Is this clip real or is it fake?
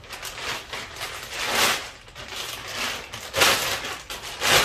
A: real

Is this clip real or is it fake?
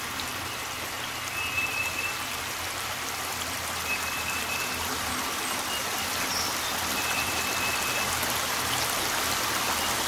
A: real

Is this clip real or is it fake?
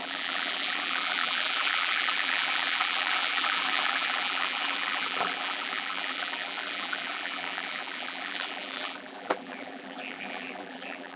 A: fake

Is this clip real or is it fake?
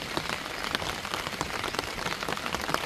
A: real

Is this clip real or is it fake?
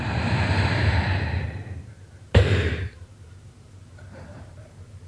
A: fake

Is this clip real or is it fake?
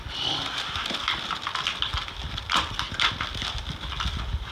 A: real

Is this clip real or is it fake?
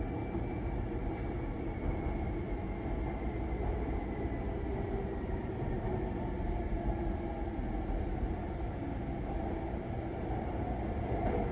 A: real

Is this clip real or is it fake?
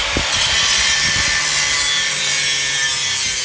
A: real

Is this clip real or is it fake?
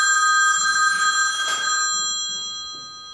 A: real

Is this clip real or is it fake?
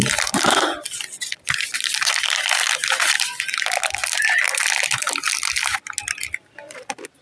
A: real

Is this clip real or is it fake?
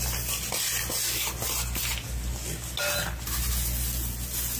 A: real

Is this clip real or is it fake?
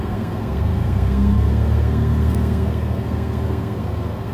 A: fake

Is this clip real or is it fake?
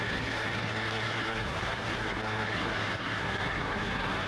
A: fake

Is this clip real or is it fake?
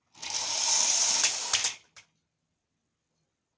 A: real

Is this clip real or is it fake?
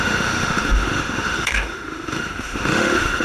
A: fake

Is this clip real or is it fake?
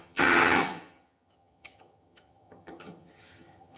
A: fake